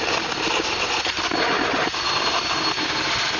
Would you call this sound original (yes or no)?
yes